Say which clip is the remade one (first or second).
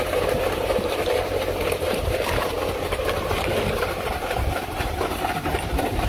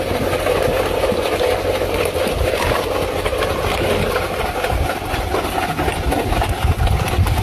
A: first